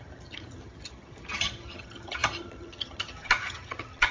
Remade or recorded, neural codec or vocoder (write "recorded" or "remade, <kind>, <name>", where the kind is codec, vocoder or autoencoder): remade, vocoder, HiFi-GAN